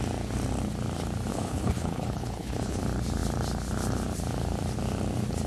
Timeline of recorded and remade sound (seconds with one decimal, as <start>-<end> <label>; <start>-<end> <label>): 0.0-1.3 recorded; 1.3-2.8 remade; 2.8-5.5 recorded